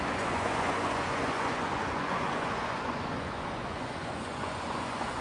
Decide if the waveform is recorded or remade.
remade